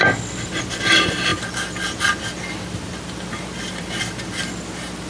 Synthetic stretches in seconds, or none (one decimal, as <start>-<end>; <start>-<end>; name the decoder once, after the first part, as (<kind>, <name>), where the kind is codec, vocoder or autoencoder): none